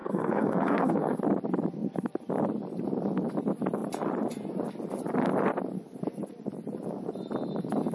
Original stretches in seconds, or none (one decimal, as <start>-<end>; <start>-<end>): 1.2-7.9